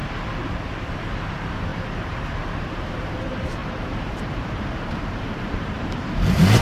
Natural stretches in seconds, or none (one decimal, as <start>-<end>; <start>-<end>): 0.0-0.9; 1.7-2.9